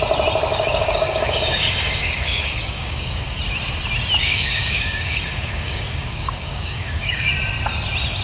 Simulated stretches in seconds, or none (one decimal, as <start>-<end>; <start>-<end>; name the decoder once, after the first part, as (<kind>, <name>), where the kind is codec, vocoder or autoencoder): 0.5-3.4 (codec, DAC); 4.2-7.3